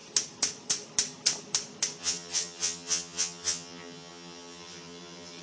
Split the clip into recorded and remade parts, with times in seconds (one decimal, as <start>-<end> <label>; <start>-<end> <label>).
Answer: 0.0-2.0 recorded; 2.0-5.4 remade